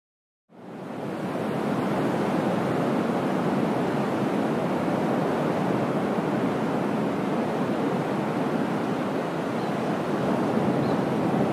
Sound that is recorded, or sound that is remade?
recorded